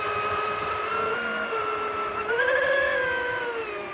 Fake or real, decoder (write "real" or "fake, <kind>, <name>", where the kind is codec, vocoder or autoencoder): real